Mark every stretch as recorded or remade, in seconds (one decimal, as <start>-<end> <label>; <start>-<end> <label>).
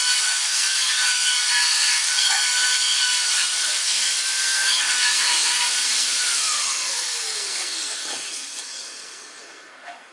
0.0-10.1 remade